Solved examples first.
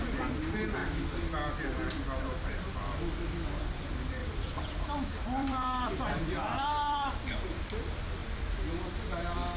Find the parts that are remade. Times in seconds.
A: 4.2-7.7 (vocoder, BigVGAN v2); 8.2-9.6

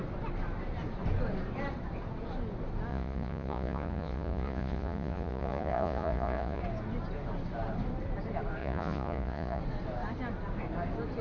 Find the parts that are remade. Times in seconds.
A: 2.9-6.6 (vocoder, Vocos); 8.6-9.6

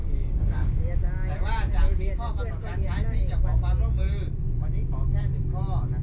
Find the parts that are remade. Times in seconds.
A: 0.0-0.8 (codec, DAC)